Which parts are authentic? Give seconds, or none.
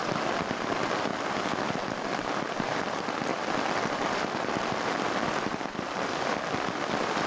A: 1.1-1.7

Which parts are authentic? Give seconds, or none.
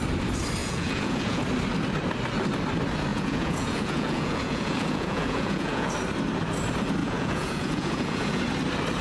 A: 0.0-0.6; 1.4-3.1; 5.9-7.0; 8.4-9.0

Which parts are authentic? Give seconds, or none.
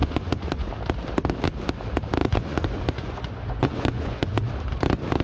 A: 0.7-2.2; 4.5-5.2